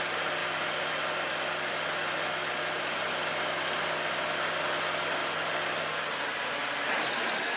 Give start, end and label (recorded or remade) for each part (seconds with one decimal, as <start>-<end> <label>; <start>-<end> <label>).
0.0-7.6 recorded